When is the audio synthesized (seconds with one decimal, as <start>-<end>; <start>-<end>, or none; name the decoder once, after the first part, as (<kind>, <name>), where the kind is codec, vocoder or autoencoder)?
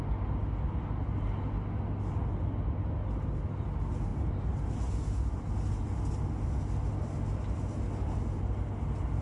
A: 4.1-4.9 (vocoder, BigVGAN v2)